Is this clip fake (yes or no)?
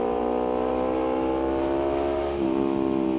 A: no